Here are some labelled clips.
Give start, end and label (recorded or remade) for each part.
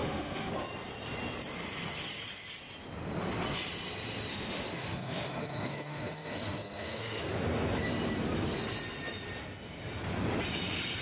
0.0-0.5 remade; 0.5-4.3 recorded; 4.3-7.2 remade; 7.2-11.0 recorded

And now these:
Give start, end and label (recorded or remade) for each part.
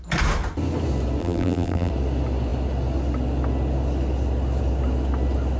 0.0-1.2 recorded; 1.2-1.9 remade; 1.9-5.6 recorded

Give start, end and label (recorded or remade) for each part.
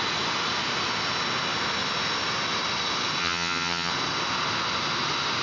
0.0-3.2 recorded; 3.2-3.9 remade; 3.9-5.4 recorded